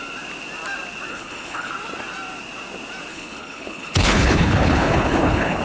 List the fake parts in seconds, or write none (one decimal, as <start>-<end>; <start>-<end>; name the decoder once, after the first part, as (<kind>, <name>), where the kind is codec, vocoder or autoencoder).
1.1-1.7 (codec, HILCodec); 3.1-5.6